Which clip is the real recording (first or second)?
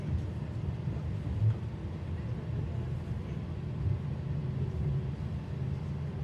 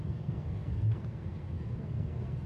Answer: first